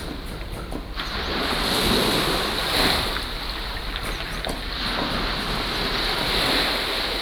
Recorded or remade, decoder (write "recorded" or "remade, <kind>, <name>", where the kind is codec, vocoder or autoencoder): recorded